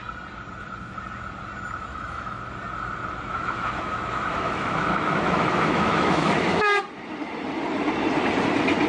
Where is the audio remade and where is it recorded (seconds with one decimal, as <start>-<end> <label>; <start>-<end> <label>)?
0.0-1.9 recorded; 1.9-2.4 remade; 2.4-3.3 recorded; 3.3-6.8 remade; 6.8-8.9 recorded